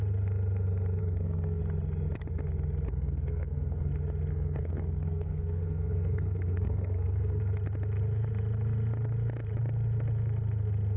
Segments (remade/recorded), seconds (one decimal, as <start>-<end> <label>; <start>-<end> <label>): 0.0-1.0 recorded; 1.0-1.6 remade; 1.6-2.9 recorded; 2.9-3.9 remade; 3.9-4.3 recorded; 4.3-7.4 remade; 7.4-11.0 recorded